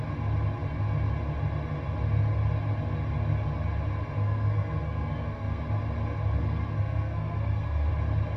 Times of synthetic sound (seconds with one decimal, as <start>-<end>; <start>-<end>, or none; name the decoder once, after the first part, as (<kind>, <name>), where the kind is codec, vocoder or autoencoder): 4.2-5.6 (codec, SNAC); 6.4-7.9